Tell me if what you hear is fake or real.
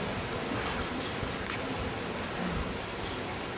real